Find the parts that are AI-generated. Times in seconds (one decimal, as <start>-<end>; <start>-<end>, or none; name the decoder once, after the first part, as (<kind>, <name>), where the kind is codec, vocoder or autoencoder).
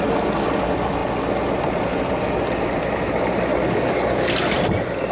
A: 3.5-4.3 (codec, DAC)